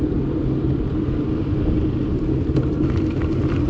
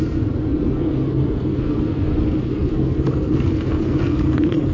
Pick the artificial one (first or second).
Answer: second